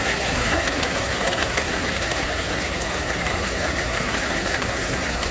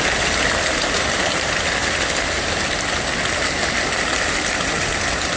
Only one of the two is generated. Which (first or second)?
first